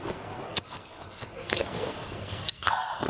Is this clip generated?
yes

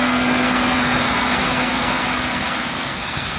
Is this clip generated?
yes